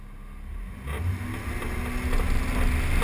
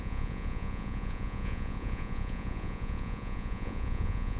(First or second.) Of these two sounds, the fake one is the second